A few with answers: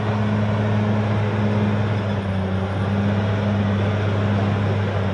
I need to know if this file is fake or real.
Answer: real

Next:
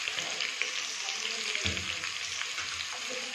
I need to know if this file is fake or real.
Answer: real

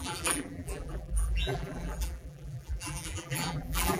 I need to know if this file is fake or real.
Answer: fake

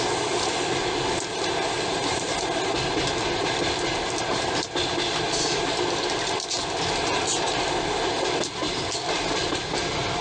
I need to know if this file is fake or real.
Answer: real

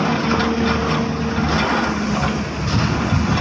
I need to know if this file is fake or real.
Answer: real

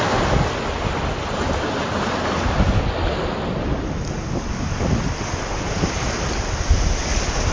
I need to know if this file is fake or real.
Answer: real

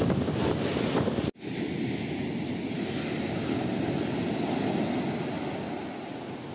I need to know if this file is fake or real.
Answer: real